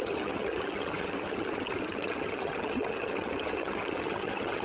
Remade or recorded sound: remade